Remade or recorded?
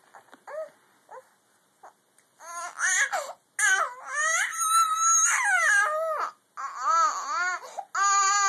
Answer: recorded